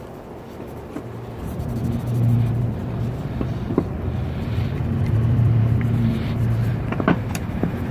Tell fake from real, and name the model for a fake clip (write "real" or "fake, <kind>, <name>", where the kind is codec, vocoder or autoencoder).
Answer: fake, vocoder, BigVGAN v2